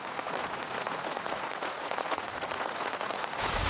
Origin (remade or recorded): remade